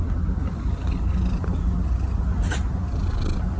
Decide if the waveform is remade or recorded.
recorded